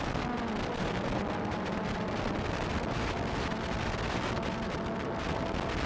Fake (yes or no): no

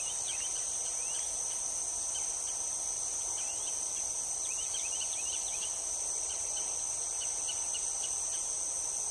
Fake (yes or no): no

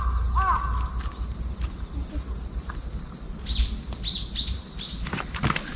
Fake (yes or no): no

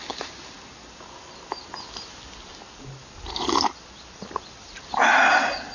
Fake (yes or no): no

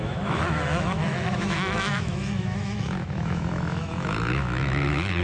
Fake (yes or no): yes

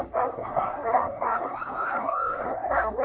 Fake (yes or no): yes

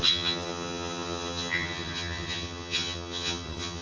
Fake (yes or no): yes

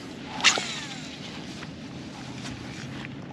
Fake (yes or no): no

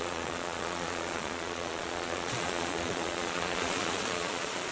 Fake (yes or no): yes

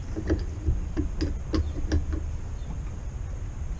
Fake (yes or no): no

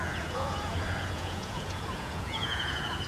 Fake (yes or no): yes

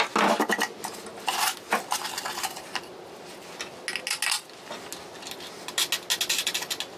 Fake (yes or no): no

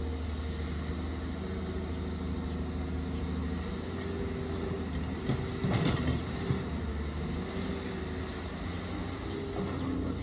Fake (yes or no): no